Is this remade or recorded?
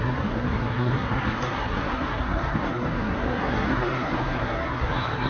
remade